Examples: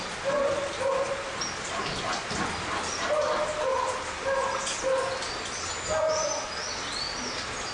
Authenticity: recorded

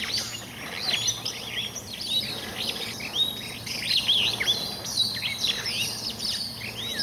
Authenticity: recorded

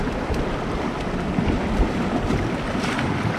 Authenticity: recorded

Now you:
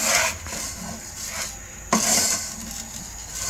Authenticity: recorded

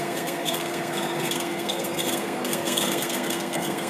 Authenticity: remade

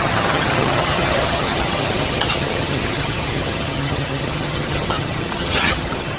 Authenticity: remade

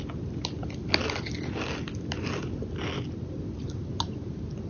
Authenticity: recorded